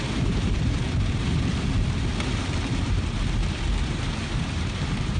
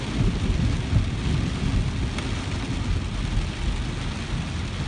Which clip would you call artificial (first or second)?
first